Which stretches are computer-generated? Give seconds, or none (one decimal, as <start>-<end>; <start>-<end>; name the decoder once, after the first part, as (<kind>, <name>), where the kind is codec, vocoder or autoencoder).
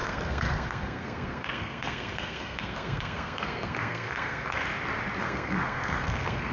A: 0.0-4.6 (codec, SNAC); 5.2-6.5